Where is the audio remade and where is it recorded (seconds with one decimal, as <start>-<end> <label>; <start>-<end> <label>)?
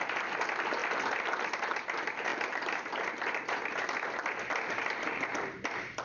0.0-0.8 recorded; 0.8-1.4 remade; 1.4-2.3 recorded; 2.3-4.4 remade; 4.4-6.0 recorded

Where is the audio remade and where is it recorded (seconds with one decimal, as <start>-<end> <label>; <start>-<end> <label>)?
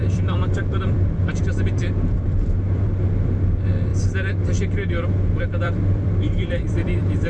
0.0-3.9 remade; 3.9-5.4 recorded; 5.4-7.3 remade